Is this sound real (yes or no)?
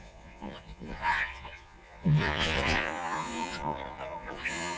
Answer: no